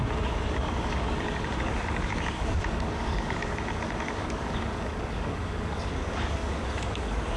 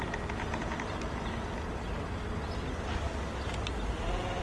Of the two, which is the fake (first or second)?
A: first